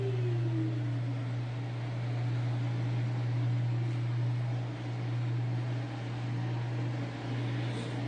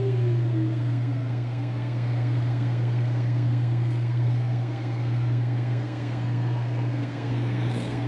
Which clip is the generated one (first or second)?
second